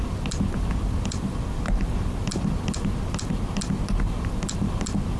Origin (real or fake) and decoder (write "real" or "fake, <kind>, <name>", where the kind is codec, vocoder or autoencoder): fake, vocoder, BigVGAN v2